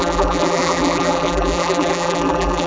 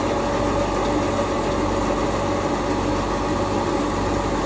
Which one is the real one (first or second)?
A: second